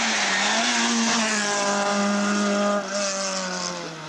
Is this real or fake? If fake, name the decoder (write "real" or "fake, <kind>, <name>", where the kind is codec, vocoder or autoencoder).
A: real